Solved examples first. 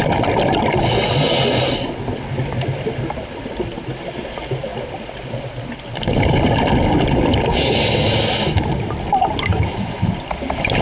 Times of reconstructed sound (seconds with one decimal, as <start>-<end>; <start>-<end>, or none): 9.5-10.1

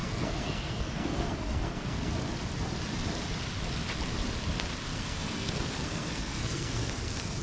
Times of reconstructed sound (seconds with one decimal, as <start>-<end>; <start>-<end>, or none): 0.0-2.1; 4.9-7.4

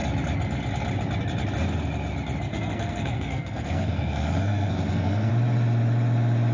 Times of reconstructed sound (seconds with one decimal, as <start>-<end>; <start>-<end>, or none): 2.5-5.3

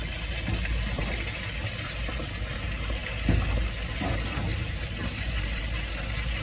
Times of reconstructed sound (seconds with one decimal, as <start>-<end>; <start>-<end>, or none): 4.5-5.6

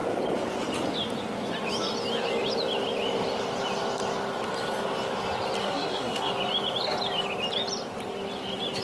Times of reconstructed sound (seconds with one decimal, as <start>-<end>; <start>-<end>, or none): 5.6-6.3